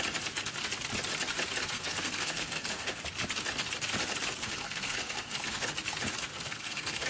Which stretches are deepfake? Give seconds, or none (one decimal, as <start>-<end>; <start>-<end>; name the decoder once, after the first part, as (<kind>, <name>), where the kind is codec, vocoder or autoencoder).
1.6-3.0 (codec, SNAC); 4.4-5.7; 6.3-7.1

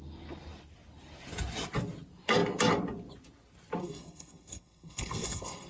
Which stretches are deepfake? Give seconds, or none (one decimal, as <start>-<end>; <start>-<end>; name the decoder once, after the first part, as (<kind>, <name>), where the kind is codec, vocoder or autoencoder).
3.8-5.7 (codec, SNAC)